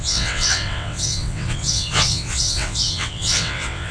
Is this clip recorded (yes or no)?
no